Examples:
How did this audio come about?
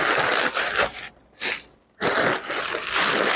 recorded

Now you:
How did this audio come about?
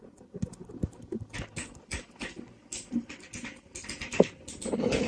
recorded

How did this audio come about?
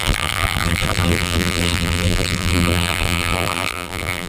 remade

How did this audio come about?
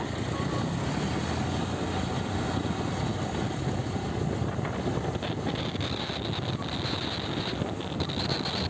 recorded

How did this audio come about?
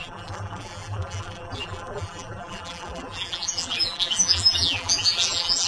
remade